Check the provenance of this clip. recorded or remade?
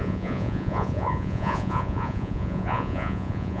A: remade